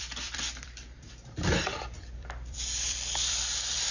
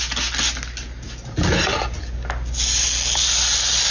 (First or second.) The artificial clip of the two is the first